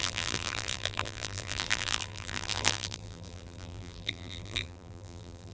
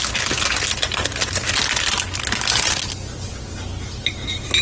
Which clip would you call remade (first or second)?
first